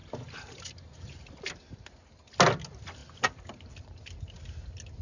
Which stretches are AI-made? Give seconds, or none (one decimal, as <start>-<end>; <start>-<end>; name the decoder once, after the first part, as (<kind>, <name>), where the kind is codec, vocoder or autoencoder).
none